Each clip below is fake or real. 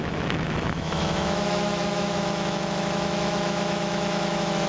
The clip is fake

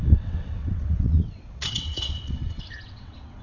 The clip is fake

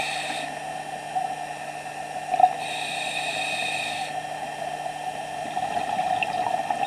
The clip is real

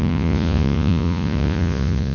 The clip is fake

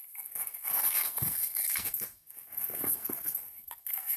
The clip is fake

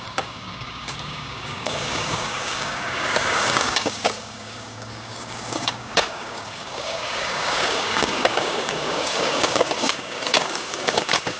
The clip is fake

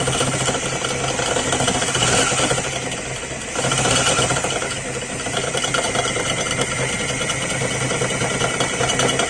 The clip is real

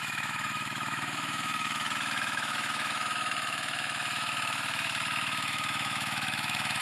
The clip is fake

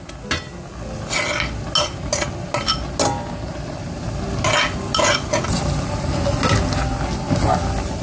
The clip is real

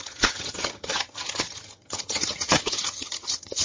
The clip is fake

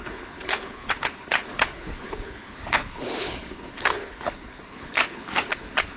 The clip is fake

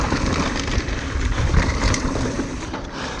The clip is real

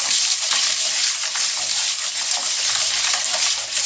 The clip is real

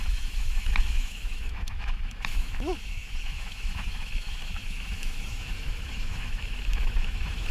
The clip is fake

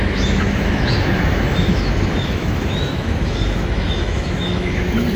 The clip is fake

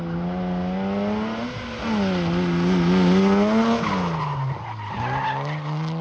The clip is real